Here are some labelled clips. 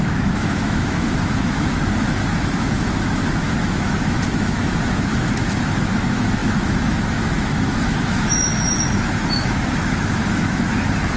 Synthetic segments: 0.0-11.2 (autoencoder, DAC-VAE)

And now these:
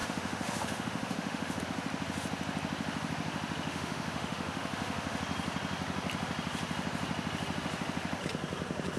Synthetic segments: 0.0-1.6 (autoencoder, DAC-VAE); 3.7-5.2

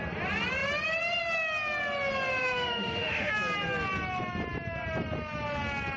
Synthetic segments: 2.4-3.3 (autoencoder, DAC-VAE)

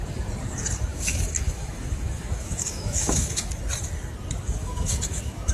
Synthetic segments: 0.9-3.5 (autoencoder, DAC-VAE); 4.6-5.5

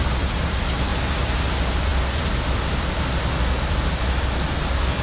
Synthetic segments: none